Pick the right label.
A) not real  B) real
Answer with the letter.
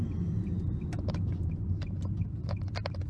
B